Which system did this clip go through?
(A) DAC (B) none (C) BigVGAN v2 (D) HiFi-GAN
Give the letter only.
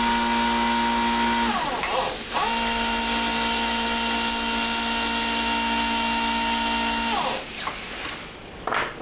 B